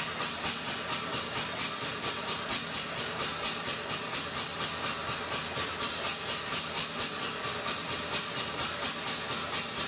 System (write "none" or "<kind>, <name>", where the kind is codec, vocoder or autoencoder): none